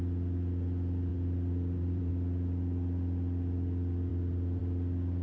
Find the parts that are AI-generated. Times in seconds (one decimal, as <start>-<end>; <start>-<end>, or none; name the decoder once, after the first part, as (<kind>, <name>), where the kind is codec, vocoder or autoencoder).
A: 1.1-2.1 (vocoder, BigVGAN v2); 4.1-4.6